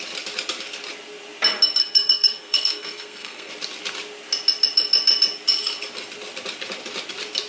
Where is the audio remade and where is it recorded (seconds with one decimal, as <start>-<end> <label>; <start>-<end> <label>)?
0.0-1.8 recorded; 1.8-3.5 remade; 3.5-7.5 recorded

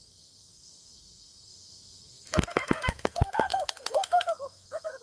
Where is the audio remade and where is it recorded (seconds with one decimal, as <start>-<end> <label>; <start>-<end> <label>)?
0.0-5.0 remade